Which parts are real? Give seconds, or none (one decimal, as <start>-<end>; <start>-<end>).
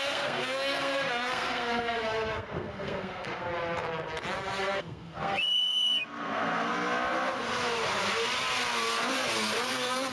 3.5-4.6; 6.7-9.7